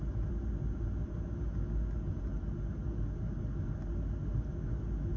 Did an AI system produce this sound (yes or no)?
no